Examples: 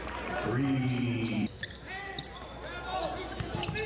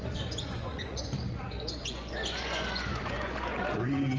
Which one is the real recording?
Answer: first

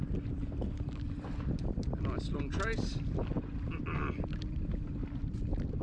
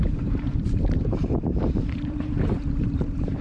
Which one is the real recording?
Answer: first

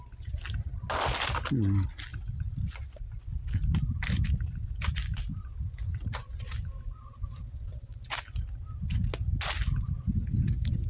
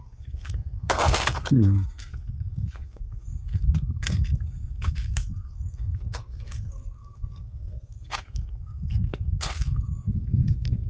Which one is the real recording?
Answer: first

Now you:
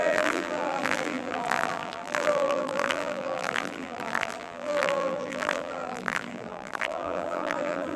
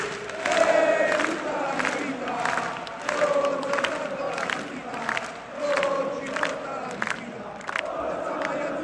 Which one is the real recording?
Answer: second